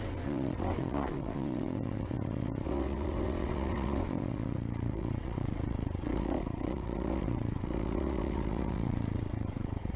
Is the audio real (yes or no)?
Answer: no